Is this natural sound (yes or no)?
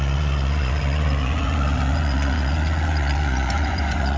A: no